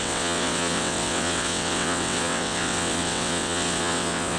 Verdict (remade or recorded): remade